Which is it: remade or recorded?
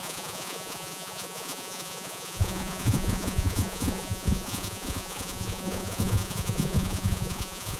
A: remade